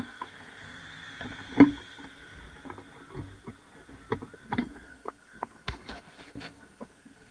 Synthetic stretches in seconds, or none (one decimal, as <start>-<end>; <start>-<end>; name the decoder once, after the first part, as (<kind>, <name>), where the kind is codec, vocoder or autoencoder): 0.0-0.8 (codec, SNAC); 4.4-7.3